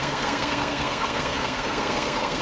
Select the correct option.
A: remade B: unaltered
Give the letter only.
A